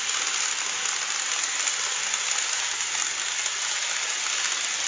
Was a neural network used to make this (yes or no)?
no